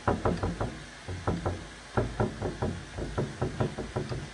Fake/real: real